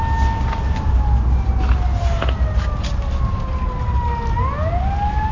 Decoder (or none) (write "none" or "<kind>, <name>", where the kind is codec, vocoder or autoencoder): none